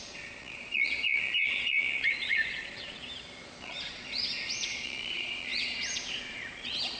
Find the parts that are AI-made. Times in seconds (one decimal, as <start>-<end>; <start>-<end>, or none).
0.0-3.0; 3.6-7.0